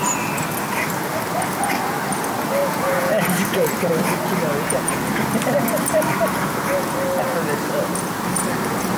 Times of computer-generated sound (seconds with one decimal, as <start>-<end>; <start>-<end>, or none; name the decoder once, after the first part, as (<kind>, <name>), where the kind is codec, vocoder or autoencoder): 2.6-3.2 (vocoder, Vocos); 4.5-5.0